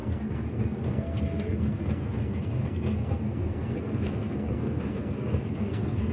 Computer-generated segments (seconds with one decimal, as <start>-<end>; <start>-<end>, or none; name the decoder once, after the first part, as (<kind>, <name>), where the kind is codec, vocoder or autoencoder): 0.0-6.1 (codec, SNAC)